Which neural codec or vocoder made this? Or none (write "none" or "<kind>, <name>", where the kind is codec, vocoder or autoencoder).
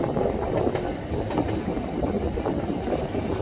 none